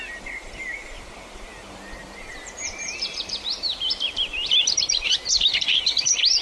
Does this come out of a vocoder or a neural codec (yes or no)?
yes